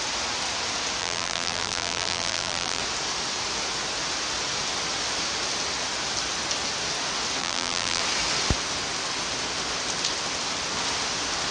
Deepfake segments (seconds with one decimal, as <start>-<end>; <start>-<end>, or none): 1.0-2.8; 7.4-8.0

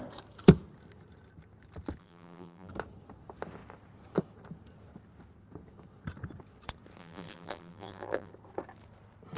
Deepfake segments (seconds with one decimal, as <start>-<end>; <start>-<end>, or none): 2.0-2.7; 7.0-8.3

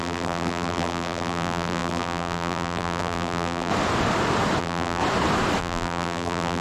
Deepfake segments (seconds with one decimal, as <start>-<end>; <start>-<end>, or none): 0.0-3.7; 4.6-5.0; 5.6-6.6

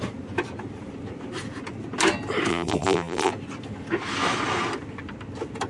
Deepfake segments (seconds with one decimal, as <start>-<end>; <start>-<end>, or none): 2.5-3.3

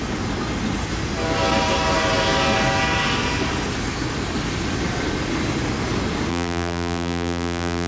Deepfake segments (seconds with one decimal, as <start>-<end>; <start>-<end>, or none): 6.3-7.9

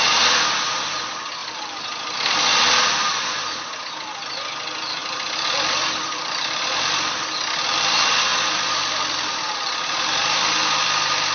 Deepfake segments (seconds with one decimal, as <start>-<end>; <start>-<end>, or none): 1.4-2.6; 5.0-7.8; 8.3-11.3